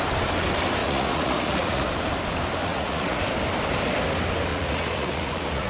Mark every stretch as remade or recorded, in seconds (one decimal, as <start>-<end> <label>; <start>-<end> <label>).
0.0-0.8 recorded; 0.8-1.9 remade; 1.9-2.6 recorded; 2.6-3.2 remade; 3.2-4.5 recorded; 4.5-5.7 remade